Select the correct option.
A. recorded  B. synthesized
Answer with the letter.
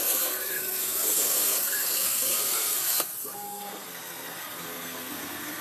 B